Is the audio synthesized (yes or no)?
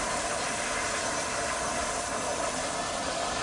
no